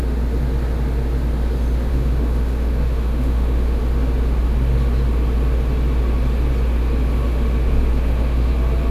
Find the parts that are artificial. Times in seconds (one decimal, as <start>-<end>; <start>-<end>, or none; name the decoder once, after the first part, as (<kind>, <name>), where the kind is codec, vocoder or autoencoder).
1.9-3.8 (autoencoder, DAC-VAE); 7.9-8.5